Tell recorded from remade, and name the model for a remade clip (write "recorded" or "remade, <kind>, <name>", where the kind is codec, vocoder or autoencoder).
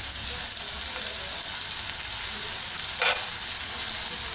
recorded